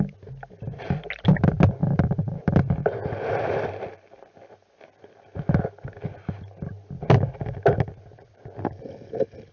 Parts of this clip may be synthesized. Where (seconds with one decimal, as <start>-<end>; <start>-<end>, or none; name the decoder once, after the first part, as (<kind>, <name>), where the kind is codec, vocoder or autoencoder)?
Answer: none